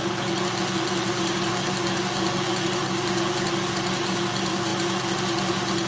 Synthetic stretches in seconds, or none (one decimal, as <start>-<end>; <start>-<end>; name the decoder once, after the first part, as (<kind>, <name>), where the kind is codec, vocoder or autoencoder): none

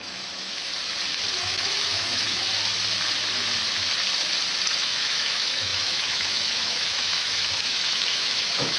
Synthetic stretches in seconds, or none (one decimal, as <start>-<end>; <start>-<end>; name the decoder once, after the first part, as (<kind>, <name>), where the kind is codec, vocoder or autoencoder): 0.0-0.7 (autoencoder, DAC-VAE); 1.4-2.4; 4.8-8.8